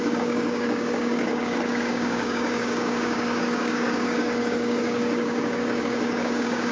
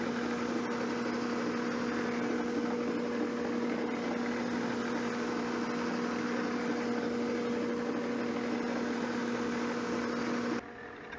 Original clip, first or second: second